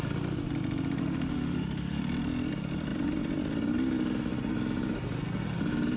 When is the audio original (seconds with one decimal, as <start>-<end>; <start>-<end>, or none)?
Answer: 0.0-1.0; 2.0-6.0